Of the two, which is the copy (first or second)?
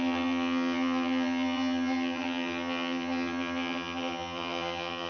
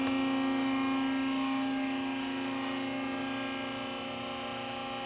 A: first